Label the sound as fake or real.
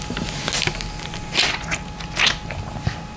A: real